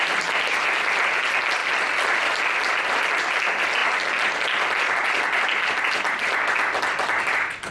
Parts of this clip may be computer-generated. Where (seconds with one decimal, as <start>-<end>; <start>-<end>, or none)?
1.6-2.8